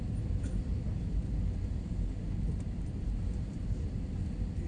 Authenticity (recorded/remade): recorded